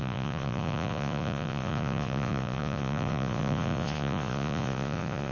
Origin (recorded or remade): remade